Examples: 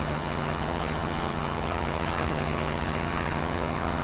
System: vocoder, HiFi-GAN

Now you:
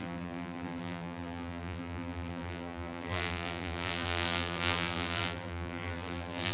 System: vocoder, BigVGAN v2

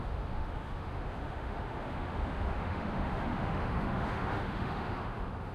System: autoencoder, DAC-VAE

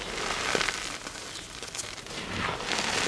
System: none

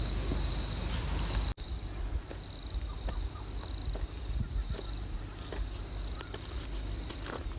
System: none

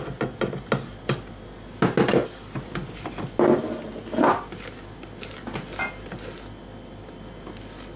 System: none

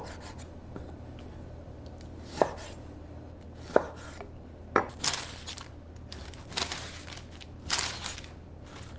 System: none